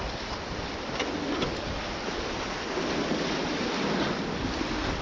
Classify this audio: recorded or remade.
recorded